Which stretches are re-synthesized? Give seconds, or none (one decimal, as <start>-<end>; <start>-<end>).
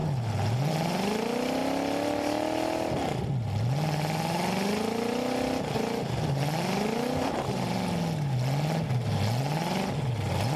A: none